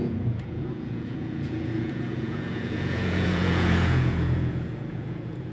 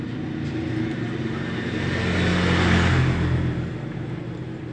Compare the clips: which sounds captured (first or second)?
second